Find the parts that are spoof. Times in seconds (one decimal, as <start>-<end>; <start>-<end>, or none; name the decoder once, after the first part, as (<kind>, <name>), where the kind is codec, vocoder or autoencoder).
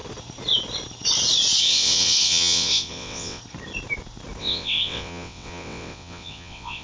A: 1.6-3.4 (vocoder, WaveNeXt); 4.4-6.8